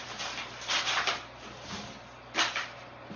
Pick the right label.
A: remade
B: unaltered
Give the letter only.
B